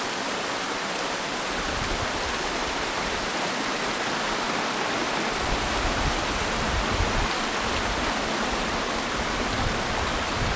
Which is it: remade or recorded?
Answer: recorded